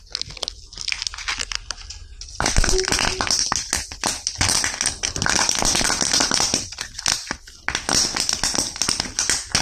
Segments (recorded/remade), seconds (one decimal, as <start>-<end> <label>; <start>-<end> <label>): 0.0-9.6 recorded